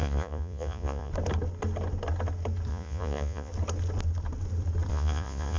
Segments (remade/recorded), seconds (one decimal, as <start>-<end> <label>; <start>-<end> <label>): 0.0-1.1 remade; 1.1-2.7 recorded; 2.7-3.5 remade; 3.5-4.9 recorded; 4.9-5.6 remade